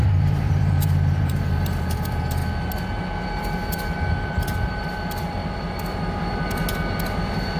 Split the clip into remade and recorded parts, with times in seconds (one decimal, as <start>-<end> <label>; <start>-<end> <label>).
0.0-2.4 remade; 2.4-3.4 recorded; 3.4-5.4 remade; 5.4-7.6 recorded

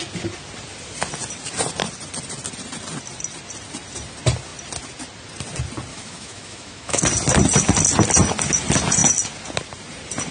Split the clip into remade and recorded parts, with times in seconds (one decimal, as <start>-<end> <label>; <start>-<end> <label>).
0.0-5.9 recorded; 5.9-7.0 remade; 7.0-10.3 recorded

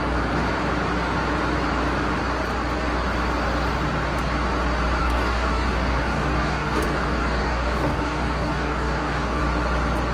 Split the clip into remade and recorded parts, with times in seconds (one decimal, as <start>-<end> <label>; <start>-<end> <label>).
0.0-5.0 recorded; 5.0-9.4 remade; 9.4-10.1 recorded

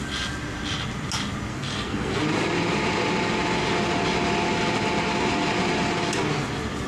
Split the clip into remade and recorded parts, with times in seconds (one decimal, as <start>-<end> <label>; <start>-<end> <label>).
0.0-1.5 recorded; 1.5-2.2 remade; 2.2-6.9 recorded

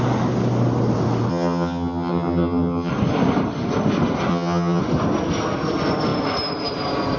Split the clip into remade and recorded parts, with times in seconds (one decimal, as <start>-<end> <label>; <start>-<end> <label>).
0.0-1.3 recorded; 1.3-2.9 remade; 2.9-4.3 recorded; 4.3-4.8 remade; 4.8-7.2 recorded

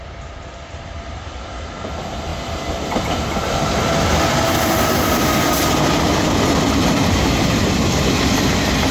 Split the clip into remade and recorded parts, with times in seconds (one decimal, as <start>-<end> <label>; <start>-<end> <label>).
0.0-8.9 recorded

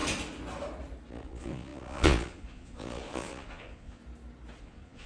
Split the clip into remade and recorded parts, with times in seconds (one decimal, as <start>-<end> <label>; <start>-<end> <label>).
0.0-1.1 recorded; 1.1-4.0 remade; 4.0-4.6 recorded; 4.6-5.1 remade